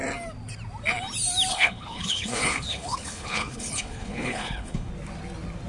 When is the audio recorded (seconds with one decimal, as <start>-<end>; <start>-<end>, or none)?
0.0-1.5; 4.9-5.7